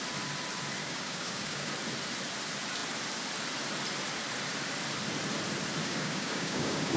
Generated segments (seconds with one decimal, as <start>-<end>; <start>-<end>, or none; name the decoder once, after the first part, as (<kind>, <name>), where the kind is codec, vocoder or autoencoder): 0.8-1.7 (codec, DAC); 5.8-7.0